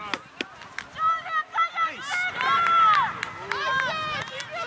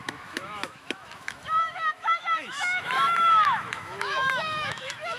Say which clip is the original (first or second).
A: first